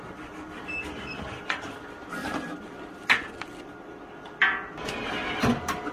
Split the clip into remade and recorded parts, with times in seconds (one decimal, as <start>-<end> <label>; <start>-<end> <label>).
0.0-5.9 recorded

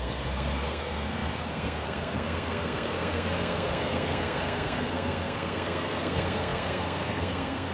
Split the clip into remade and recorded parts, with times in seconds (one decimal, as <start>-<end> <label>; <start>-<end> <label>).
0.0-7.7 remade

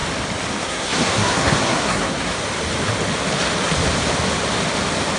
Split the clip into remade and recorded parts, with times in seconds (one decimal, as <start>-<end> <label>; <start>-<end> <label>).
0.0-0.6 recorded; 0.6-2.3 remade; 2.3-5.2 recorded

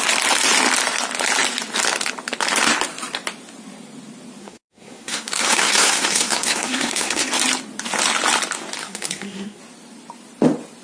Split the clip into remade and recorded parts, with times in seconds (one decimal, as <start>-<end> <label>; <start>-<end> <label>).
0.0-4.4 recorded; 4.4-7.3 remade; 7.3-8.8 recorded; 8.8-9.6 remade; 9.6-10.8 recorded

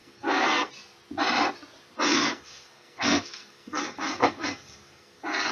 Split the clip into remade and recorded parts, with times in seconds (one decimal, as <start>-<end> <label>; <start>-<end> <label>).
0.0-0.7 remade; 0.7-2.1 recorded; 2.1-5.5 remade

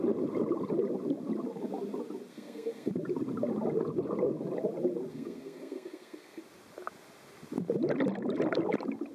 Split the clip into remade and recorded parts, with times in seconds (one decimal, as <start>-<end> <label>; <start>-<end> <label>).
0.0-2.3 recorded; 2.3-2.9 remade; 2.9-5.1 recorded; 5.1-6.4 remade; 6.4-9.1 recorded

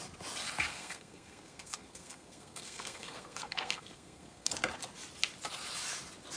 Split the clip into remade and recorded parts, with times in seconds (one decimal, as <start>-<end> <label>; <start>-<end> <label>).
0.0-0.7 recorded; 0.7-4.5 remade; 4.5-6.4 recorded